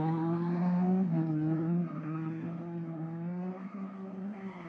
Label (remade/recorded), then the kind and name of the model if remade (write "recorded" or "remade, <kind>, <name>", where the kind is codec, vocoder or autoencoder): remade, codec, SNAC